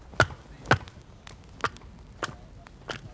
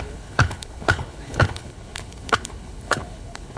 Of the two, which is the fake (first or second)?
second